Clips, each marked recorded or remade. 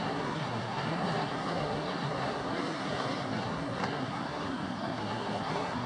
remade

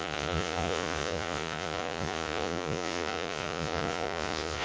remade